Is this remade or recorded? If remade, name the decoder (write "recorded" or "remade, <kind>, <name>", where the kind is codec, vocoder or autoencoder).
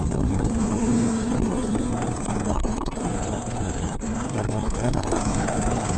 remade, codec, SNAC